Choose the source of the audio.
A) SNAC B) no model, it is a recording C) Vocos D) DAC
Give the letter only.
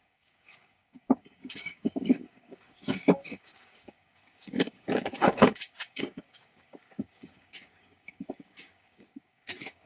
D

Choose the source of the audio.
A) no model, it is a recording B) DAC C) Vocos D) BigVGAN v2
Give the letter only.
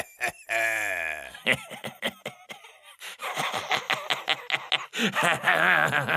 A